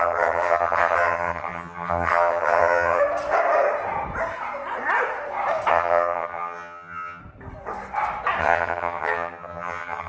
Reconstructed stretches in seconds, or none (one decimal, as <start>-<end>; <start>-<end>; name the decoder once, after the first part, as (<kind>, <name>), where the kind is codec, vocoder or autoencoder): 0.0-3.0 (vocoder, HiFi-GAN); 5.7-7.2; 8.4-10.1